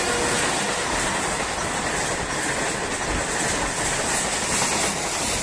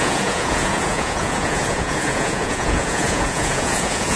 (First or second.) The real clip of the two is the first